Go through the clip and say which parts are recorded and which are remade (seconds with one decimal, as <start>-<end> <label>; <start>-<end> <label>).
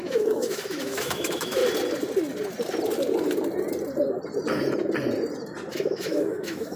0.0-1.6 remade; 1.6-5.7 recorded; 5.7-6.8 remade